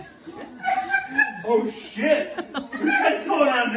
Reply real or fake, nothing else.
real